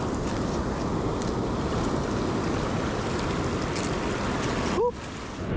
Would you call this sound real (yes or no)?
yes